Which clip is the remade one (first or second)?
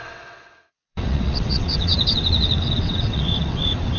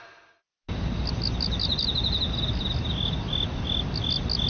first